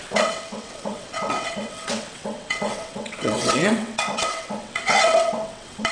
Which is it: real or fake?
fake